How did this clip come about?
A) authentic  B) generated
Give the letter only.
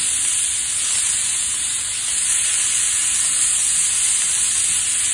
A